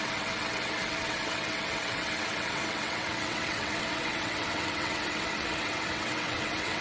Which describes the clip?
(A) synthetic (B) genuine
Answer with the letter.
A